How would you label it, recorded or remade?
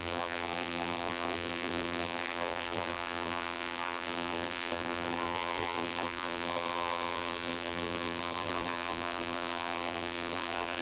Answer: remade